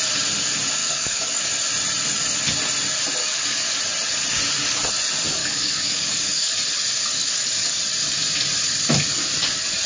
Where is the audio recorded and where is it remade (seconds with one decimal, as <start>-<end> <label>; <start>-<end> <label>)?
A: 0.0-0.8 recorded; 0.8-1.5 remade; 1.5-3.2 recorded; 3.2-3.8 remade; 3.8-5.4 recorded; 5.4-6.5 remade; 6.5-7.1 recorded; 7.1-7.8 remade; 7.8-9.9 recorded